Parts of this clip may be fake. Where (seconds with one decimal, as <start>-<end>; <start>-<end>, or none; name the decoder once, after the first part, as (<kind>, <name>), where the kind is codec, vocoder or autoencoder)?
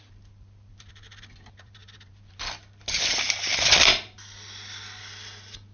none